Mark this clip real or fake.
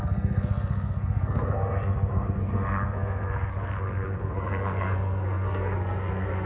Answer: fake